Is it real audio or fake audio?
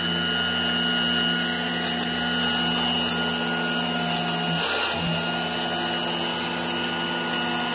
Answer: real